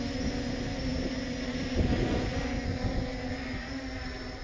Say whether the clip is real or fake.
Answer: real